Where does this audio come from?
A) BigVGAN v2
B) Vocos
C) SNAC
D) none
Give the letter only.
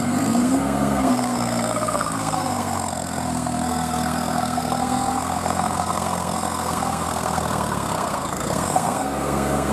C